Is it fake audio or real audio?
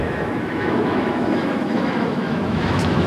fake